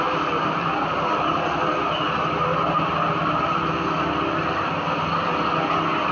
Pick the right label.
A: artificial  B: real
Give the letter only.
B